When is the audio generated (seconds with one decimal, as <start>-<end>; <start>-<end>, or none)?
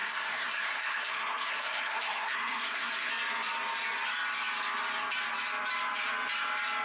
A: 0.0-3.1